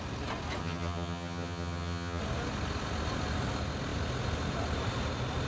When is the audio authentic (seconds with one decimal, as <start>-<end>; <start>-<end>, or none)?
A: 0.0-0.6; 2.2-5.5